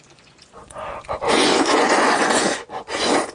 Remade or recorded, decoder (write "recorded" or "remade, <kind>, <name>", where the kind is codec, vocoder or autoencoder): remade, vocoder, Vocos